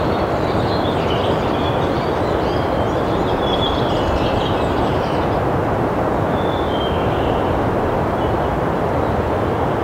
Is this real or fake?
real